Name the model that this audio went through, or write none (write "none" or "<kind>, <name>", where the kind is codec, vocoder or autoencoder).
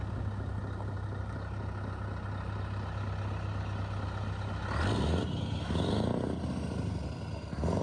none